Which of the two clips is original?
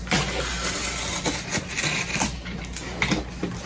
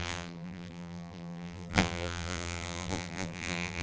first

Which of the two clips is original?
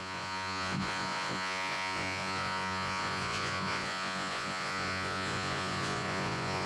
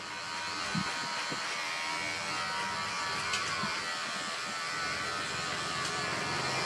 second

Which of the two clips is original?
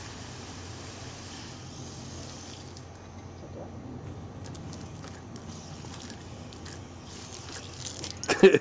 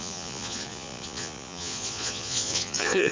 first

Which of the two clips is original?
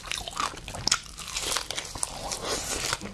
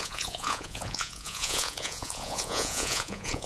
first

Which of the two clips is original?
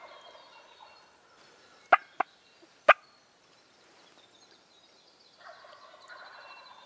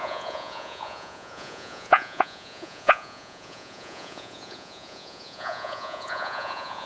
first